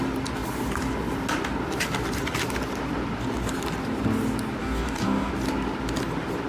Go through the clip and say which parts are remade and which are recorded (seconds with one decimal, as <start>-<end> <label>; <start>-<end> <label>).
0.0-4.6 recorded; 4.6-5.3 remade; 5.3-6.5 recorded